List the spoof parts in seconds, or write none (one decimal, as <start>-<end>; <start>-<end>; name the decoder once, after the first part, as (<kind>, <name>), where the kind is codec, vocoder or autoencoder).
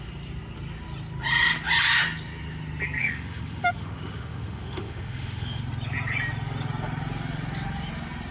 3.0-5.6 (autoencoder, DAC-VAE)